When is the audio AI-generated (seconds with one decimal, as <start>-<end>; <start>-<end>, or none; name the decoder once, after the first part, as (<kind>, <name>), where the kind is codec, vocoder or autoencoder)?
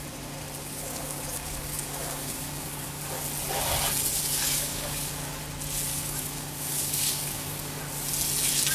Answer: 0.6-3.0 (codec, DAC); 4.1-5.4; 5.9-7.8